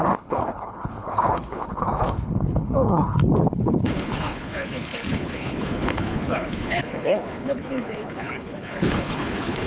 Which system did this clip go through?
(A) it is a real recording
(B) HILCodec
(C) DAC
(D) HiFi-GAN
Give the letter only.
B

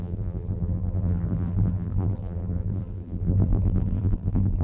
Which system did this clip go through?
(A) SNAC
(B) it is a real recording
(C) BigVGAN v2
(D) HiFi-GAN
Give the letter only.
C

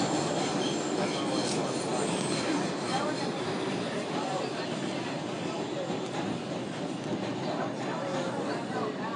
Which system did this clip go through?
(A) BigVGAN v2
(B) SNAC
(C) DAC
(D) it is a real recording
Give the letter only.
D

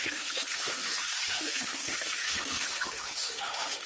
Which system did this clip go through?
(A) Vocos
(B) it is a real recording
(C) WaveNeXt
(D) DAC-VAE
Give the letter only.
D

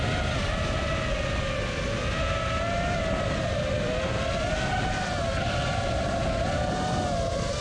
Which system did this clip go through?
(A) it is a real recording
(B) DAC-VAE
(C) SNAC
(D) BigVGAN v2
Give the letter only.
A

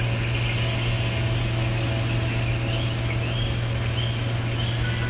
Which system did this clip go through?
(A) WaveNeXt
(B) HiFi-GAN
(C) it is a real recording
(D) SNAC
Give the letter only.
C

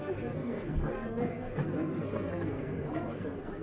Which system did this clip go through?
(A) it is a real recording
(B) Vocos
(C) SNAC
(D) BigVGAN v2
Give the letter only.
C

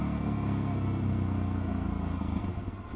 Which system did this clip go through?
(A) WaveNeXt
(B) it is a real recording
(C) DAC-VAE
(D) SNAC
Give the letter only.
D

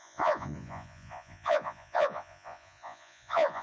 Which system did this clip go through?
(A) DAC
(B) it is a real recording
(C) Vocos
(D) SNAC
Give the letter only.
C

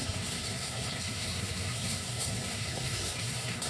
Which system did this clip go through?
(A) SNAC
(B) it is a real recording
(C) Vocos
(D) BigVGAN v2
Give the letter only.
A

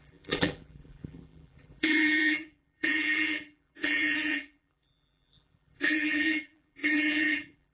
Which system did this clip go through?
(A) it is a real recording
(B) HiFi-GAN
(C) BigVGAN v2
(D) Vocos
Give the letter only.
C